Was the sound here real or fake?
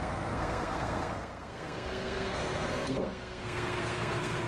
fake